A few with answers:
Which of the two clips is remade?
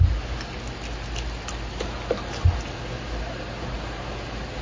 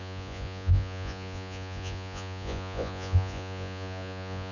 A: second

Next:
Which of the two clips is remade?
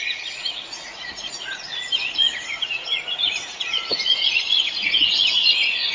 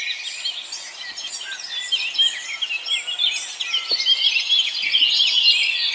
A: first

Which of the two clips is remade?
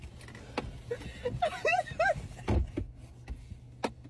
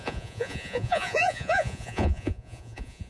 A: second